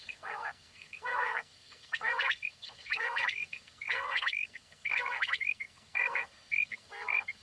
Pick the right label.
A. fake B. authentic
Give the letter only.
A